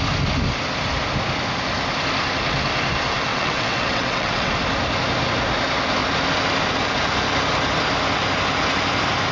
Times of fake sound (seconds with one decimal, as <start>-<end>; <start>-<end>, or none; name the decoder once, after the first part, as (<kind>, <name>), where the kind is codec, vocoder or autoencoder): 3.3-4.5 (vocoder, WaveNeXt)